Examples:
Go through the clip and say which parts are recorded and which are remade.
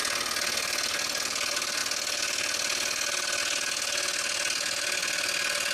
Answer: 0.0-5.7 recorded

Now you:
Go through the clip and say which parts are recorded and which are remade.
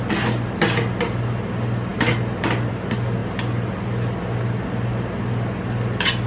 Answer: 0.0-6.3 recorded